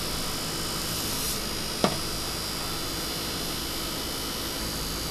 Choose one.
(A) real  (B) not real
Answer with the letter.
A